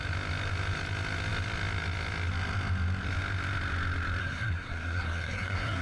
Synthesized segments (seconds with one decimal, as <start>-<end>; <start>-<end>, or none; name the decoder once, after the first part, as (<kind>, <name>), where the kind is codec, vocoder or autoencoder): 4.2-5.8 (codec, SNAC)